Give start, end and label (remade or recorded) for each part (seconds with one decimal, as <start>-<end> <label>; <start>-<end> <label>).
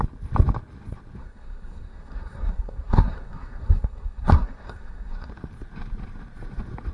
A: 0.0-1.2 recorded; 1.2-5.3 remade; 5.3-6.9 recorded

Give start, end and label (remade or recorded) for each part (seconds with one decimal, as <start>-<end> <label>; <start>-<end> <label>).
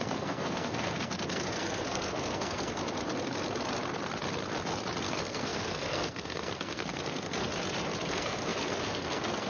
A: 0.0-2.8 remade; 2.8-5.0 recorded; 5.0-7.5 remade; 7.5-8.1 recorded; 8.1-9.5 remade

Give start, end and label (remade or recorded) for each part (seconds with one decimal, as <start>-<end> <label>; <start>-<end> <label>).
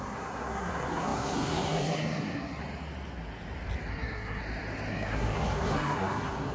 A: 0.0-2.6 remade; 2.6-3.9 recorded; 3.9-4.4 remade; 4.4-4.9 recorded; 4.9-6.5 remade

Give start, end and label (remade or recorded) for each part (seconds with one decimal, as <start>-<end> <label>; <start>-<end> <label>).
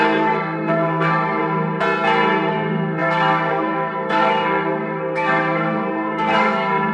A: 0.0-1.4 remade; 1.4-2.5 recorded; 2.5-6.9 remade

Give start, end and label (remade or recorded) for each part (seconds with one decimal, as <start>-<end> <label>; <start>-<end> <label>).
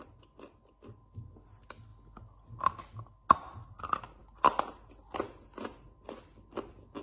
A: 0.0-7.0 recorded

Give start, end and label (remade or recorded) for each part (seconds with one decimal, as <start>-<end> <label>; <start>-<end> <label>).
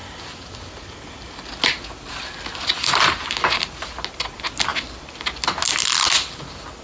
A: 0.0-6.8 recorded